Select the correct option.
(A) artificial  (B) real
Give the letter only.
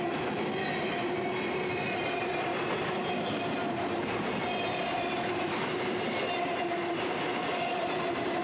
B